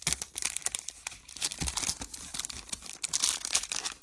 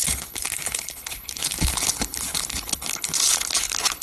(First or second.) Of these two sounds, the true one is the first